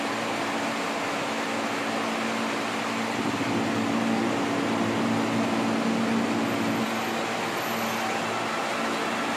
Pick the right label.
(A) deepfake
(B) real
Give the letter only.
B